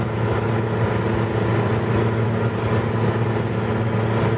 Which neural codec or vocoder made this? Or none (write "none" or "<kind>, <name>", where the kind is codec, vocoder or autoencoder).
none